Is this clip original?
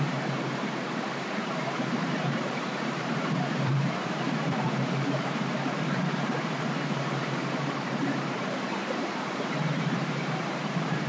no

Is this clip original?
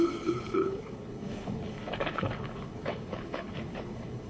no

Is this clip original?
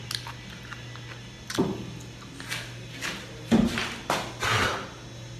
yes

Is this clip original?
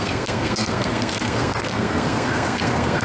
no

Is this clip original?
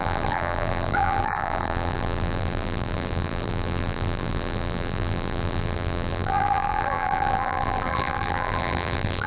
no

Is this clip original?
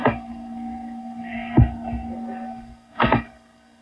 no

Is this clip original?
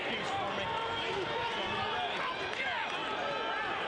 yes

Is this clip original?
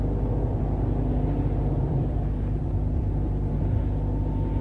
no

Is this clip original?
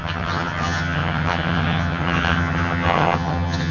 no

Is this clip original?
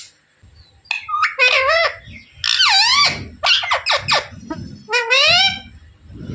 yes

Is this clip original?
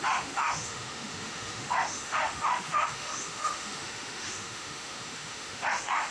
no